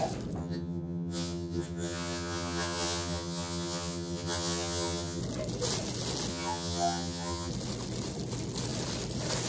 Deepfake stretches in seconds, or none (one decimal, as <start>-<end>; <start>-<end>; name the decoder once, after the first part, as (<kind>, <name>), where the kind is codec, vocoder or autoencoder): 0.4-5.2 (vocoder, HiFi-GAN); 6.3-7.5